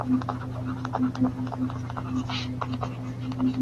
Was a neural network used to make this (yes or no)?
no